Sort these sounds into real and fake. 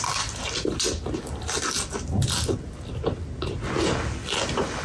real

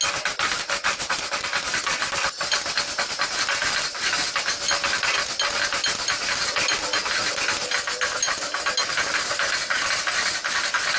real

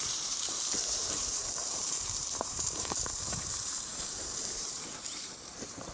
fake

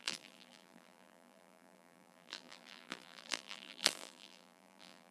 fake